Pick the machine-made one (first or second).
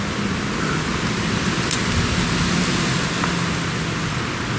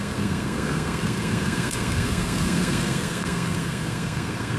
second